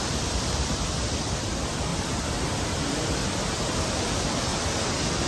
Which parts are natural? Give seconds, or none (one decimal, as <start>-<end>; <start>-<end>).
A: 1.9-2.9; 4.5-5.3